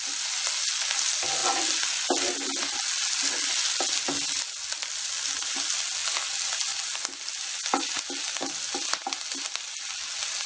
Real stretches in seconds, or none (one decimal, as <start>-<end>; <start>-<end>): 0.0-10.5

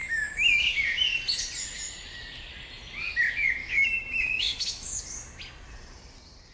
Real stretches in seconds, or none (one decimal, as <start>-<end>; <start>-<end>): 0.9-3.6; 5.0-6.5

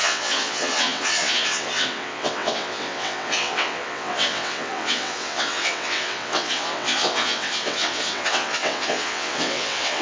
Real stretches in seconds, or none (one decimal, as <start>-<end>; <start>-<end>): none